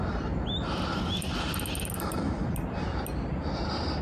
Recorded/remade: recorded